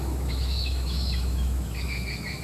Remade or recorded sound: remade